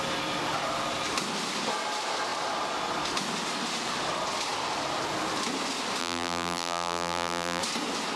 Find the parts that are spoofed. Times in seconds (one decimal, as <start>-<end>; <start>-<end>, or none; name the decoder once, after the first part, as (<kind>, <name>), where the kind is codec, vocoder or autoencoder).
6.0-7.6 (vocoder, BigVGAN v2)